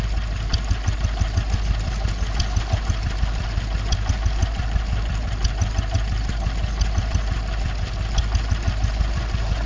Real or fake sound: real